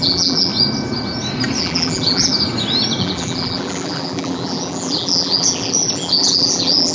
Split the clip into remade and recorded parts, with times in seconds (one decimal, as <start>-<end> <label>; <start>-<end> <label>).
0.0-0.5 remade; 0.5-1.6 recorded; 1.6-2.3 remade; 2.3-3.0 recorded; 3.0-6.9 remade